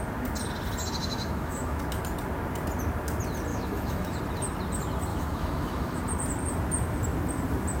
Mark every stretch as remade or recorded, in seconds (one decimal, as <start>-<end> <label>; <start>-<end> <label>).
0.0-1.0 recorded; 1.0-1.8 remade; 1.8-3.5 recorded; 3.5-4.2 remade; 4.2-5.1 recorded; 5.1-6.0 remade; 6.0-7.8 recorded